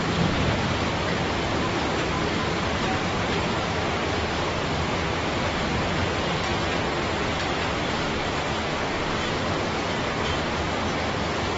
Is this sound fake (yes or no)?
no